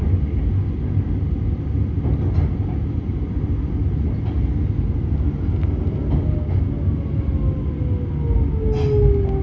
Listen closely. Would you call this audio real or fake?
real